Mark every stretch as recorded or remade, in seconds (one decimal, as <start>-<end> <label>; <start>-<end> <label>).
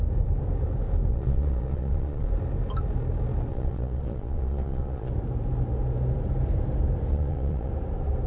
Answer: 0.0-1.1 recorded; 1.1-2.3 remade; 2.3-3.5 recorded; 3.5-5.1 remade; 5.1-7.1 recorded; 7.1-7.7 remade; 7.7-8.3 recorded